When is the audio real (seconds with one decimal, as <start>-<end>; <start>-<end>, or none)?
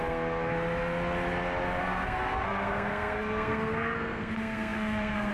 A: 0.5-1.8